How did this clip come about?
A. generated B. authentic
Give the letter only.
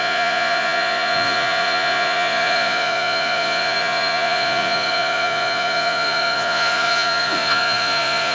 A